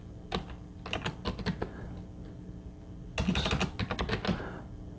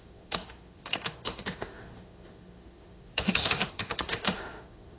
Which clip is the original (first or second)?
first